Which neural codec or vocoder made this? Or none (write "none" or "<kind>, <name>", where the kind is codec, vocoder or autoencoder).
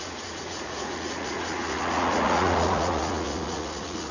vocoder, Vocos